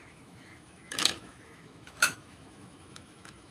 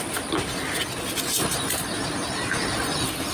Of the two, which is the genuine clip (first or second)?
second